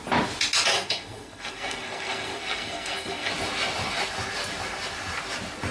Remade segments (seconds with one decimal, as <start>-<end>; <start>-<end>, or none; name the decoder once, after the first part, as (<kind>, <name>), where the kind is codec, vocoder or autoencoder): 0.7-3.3 (codec, SNAC)